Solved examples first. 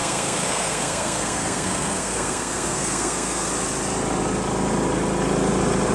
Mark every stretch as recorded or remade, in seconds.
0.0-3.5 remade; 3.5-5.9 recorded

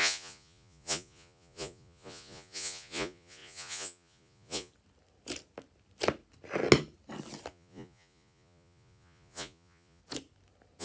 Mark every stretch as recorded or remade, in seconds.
0.0-4.7 remade; 4.7-7.5 recorded; 7.5-10.0 remade; 10.0-10.8 recorded

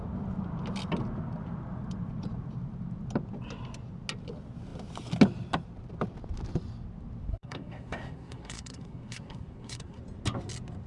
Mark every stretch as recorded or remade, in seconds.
0.0-7.3 recorded; 7.3-10.0 remade; 10.0-10.9 recorded

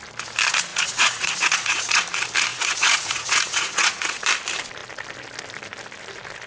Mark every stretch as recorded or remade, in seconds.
0.0-0.7 recorded; 0.7-2.0 remade; 2.0-2.5 recorded; 2.5-4.2 remade; 4.2-6.5 recorded

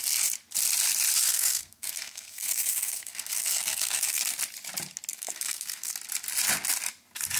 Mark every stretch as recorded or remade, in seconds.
0.0-1.3 recorded; 1.3-4.2 remade; 4.2-5.1 recorded; 5.1-5.9 remade; 5.9-7.4 recorded

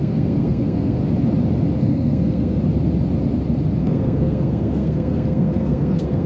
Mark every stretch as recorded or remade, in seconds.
0.0-1.0 remade; 1.0-1.8 recorded; 1.8-2.6 remade; 2.6-3.8 recorded; 3.8-6.3 remade

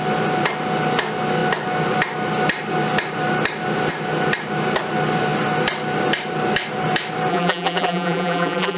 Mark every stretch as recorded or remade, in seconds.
0.0-7.3 recorded; 7.3-8.8 remade